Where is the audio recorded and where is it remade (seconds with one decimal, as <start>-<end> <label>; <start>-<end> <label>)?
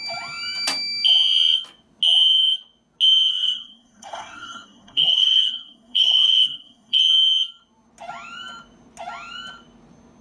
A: 0.0-3.3 recorded; 3.3-7.0 remade; 7.0-10.2 recorded